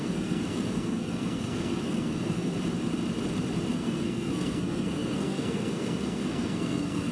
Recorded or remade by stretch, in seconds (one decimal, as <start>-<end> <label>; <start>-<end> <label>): 0.0-2.5 remade; 2.5-3.7 recorded; 3.7-7.1 remade